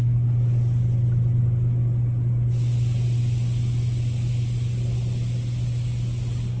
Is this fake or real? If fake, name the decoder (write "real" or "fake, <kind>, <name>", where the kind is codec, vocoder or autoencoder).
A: real